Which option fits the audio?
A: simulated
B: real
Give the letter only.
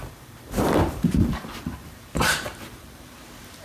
A